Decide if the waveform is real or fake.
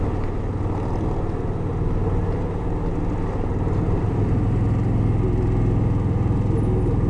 real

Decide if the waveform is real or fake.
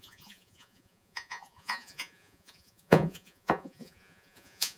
fake